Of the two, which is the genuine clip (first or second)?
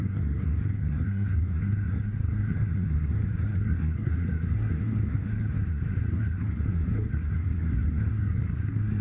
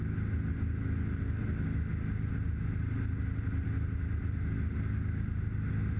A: second